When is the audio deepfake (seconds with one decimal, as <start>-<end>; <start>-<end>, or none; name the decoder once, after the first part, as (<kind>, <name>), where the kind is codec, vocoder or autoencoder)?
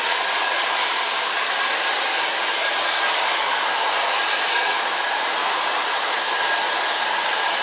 5.4-6.1 (vocoder, BigVGAN v2)